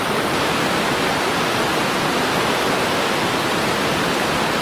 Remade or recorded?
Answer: recorded